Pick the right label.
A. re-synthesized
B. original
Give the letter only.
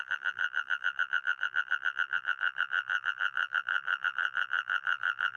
A